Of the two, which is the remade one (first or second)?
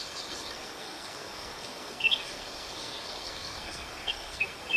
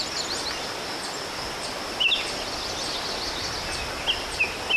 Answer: first